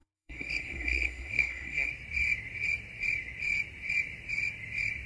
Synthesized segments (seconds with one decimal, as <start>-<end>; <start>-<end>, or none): 0.0-1.9